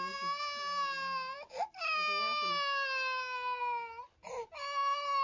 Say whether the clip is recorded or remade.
recorded